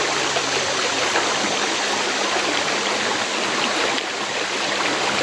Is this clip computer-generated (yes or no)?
no